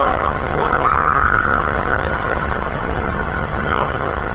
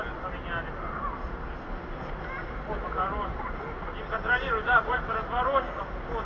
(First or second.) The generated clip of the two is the first